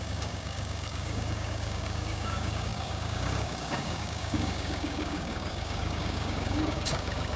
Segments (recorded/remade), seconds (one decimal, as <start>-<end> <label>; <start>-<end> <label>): 0.0-7.4 remade